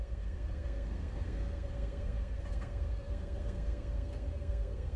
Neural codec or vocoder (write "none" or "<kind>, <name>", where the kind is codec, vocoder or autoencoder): codec, SNAC